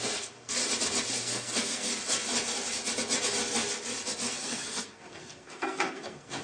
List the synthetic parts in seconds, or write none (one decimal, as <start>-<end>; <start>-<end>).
0.0-0.6; 1.1-1.9; 4.2-6.4